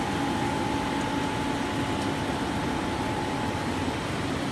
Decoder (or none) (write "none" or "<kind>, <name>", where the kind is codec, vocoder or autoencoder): none